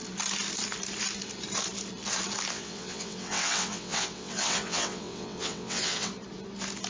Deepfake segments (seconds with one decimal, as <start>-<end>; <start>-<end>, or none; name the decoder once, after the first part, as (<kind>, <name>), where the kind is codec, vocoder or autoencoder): 2.5-6.1 (vocoder, WaveNeXt)

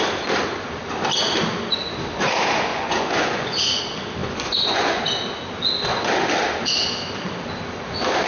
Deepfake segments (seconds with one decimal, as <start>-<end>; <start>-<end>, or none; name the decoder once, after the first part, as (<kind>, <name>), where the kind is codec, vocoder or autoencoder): 2.7-3.8 (vocoder, Vocos); 4.2-5.0

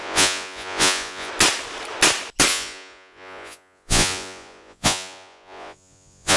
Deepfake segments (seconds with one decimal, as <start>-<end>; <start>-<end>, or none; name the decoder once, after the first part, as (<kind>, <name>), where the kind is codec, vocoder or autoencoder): 0.0-1.3 (vocoder, Vocos); 2.5-6.4

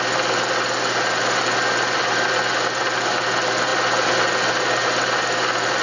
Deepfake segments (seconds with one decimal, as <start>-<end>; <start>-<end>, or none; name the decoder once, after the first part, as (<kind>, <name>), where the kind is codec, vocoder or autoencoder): none

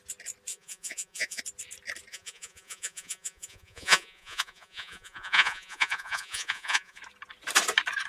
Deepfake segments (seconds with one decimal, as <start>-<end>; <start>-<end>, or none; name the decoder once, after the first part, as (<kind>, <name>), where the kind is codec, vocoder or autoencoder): 0.5-1.4 (vocoder, Vocos); 2.1-7.0

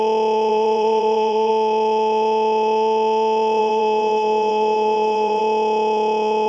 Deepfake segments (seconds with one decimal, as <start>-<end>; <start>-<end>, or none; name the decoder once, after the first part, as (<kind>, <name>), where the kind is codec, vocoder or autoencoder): 0.5-1.5 (vocoder, WaveNeXt); 3.6-5.4

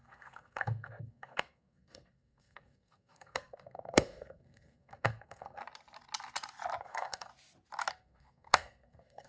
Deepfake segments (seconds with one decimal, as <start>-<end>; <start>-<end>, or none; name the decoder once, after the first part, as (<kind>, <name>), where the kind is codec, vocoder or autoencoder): 0.0-5.6 (codec, SNAC); 6.8-7.3; 7.9-9.3